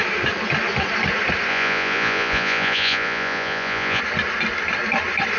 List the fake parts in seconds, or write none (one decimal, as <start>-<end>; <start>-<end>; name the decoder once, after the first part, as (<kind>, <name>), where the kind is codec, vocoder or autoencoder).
1.5-4.0 (vocoder, Vocos)